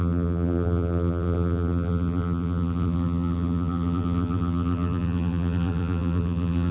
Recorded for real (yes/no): no